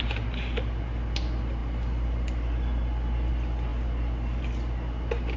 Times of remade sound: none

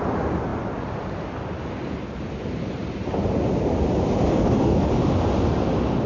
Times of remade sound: 4.3-4.9 (codec, DAC)

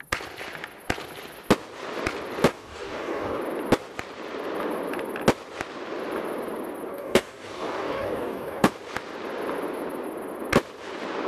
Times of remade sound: 2.5-3.4 (codec, DAC); 6.9-8.7